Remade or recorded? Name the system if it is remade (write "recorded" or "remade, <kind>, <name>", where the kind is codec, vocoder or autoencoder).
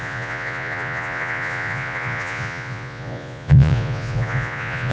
remade, vocoder, Vocos